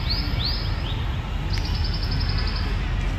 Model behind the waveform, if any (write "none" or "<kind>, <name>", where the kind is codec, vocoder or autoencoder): none